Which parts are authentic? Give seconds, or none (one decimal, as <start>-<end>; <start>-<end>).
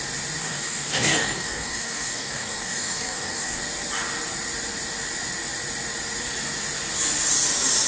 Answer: 0.0-0.4; 3.6-7.9